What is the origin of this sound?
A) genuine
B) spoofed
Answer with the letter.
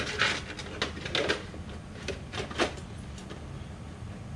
A